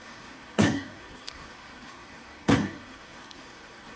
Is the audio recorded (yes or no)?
no